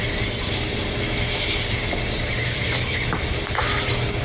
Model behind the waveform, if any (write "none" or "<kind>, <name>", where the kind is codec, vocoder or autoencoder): none